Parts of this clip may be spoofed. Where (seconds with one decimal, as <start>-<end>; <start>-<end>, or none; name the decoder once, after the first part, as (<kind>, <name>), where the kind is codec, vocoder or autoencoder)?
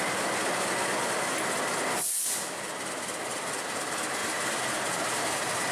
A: none